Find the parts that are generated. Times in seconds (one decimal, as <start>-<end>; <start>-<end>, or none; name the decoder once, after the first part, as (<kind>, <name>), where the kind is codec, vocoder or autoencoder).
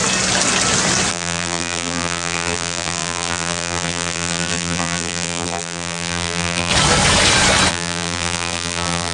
1.1-6.7 (vocoder, BigVGAN v2); 7.7-9.1